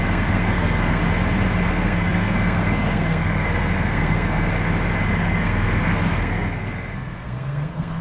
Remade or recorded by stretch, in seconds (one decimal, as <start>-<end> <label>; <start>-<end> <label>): 0.0-1.0 remade; 1.0-1.7 recorded; 1.7-4.5 remade; 4.5-5.1 recorded; 5.1-8.0 remade